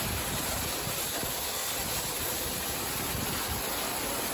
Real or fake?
fake